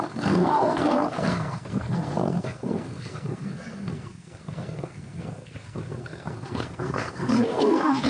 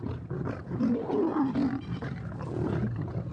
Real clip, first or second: second